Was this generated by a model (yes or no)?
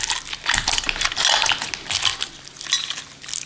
no